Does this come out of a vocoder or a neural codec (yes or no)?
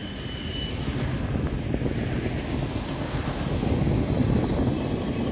no